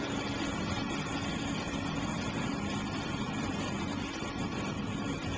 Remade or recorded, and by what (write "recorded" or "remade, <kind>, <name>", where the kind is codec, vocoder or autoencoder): recorded